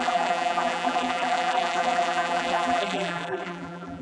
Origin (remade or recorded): remade